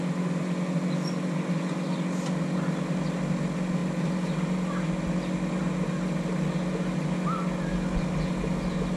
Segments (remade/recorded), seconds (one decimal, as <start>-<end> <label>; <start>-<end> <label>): 0.0-9.0 recorded